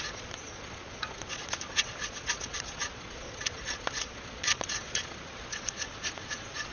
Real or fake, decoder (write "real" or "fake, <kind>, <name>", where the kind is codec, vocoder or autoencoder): fake, vocoder, Vocos